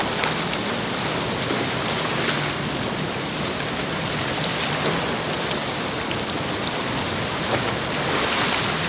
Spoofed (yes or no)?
no